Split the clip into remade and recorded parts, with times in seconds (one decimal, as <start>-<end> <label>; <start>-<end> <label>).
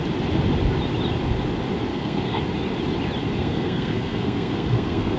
0.0-1.9 recorded; 1.9-2.4 remade; 2.4-3.4 recorded; 3.4-5.2 remade